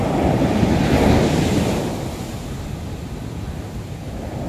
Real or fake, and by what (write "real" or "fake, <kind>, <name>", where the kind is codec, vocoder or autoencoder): real